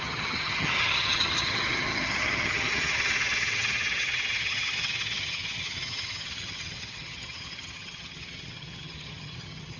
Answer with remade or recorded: remade